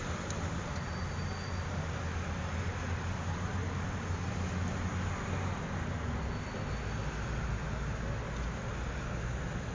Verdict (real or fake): real